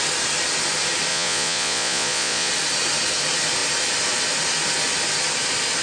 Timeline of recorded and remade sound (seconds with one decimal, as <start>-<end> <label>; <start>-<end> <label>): 0.0-1.1 recorded; 1.1-2.5 remade; 2.5-5.8 recorded